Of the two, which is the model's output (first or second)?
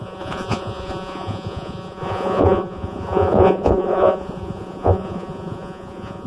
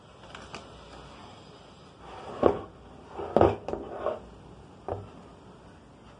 first